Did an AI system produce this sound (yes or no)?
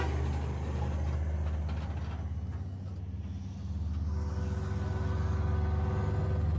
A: no